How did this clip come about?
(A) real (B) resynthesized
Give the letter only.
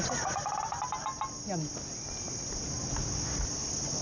A